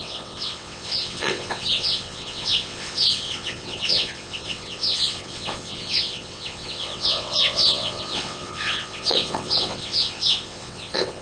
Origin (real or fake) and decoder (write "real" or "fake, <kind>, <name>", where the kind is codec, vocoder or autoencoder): fake, vocoder, WaveNeXt